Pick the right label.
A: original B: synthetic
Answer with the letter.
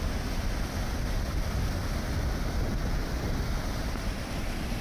A